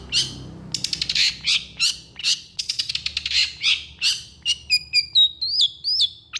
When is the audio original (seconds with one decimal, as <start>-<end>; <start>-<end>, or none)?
0.0-2.2; 2.9-6.4